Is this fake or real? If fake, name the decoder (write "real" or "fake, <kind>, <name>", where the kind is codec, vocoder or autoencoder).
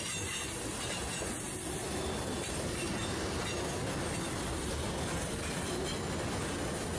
real